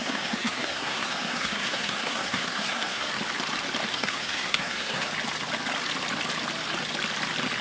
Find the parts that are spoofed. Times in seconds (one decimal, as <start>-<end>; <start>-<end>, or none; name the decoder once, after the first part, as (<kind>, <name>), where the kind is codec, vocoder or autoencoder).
0.0-3.1 (codec, SNAC); 3.9-5.1